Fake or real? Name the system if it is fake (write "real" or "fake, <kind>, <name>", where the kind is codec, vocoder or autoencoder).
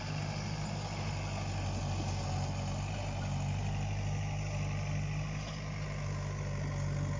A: real